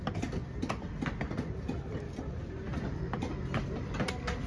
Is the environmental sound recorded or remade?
recorded